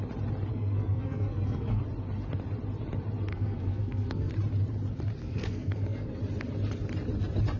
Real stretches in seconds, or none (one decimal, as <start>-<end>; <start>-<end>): 0.0-0.5; 1.8-3.3; 4.3-5.2; 6.2-7.6